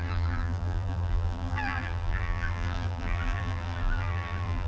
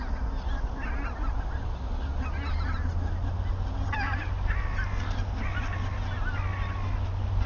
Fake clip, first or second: first